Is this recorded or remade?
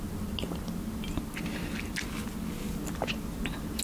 recorded